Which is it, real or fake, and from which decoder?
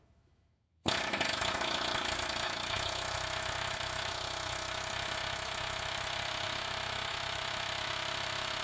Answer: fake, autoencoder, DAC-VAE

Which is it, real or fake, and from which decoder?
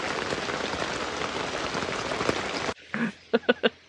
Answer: real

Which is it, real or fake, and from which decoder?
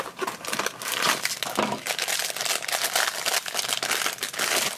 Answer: real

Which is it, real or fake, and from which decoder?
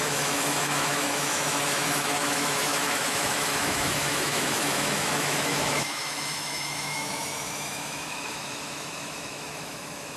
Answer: fake, autoencoder, DAC-VAE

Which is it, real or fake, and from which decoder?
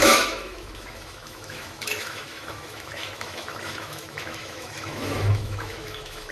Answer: fake, autoencoder, DAC-VAE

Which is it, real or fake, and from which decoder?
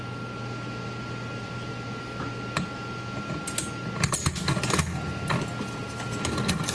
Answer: real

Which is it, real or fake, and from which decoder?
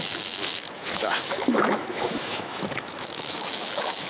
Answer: fake, autoencoder, DAC-VAE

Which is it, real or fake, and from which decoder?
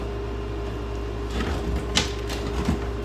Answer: real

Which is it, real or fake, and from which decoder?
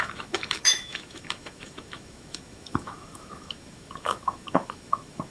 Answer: fake, autoencoder, DAC-VAE